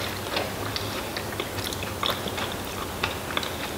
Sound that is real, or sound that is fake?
real